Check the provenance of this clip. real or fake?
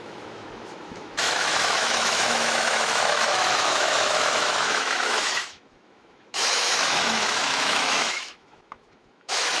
fake